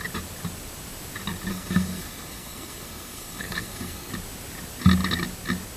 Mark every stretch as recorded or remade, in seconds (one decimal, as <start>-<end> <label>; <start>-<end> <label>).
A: 0.0-1.5 recorded; 1.5-4.1 remade; 4.1-5.8 recorded